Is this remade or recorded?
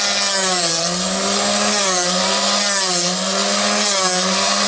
recorded